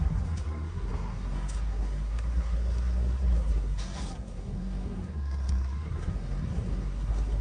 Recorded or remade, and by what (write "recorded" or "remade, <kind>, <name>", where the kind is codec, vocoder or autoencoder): remade, codec, SNAC